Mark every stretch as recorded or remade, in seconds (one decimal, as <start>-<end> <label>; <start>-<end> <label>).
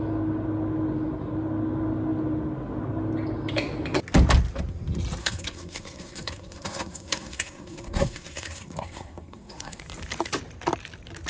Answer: 0.0-5.2 recorded; 5.2-9.8 remade; 9.8-11.3 recorded